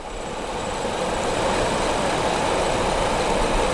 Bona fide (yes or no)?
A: yes